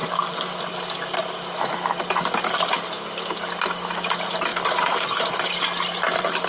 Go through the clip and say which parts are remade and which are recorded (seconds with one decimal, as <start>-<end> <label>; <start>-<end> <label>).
0.0-6.5 recorded